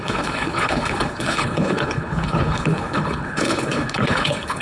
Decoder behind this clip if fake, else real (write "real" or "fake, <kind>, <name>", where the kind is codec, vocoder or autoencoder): fake, codec, HILCodec